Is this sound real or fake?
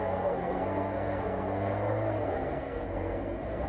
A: fake